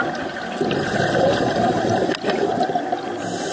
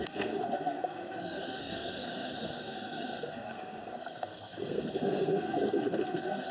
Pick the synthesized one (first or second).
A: second